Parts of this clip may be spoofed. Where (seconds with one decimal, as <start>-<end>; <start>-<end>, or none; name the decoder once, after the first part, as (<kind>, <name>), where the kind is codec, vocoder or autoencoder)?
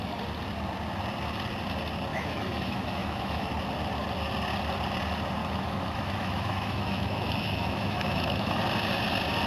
2.1-3.5 (autoencoder, DAC-VAE); 5.4-8.6